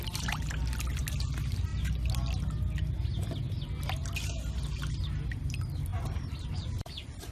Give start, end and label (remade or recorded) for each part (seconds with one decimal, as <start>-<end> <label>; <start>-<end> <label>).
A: 0.0-5.9 recorded; 5.9-7.3 remade